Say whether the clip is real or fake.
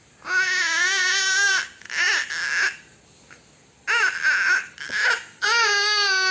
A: real